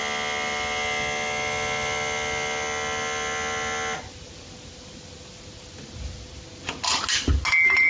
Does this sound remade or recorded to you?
recorded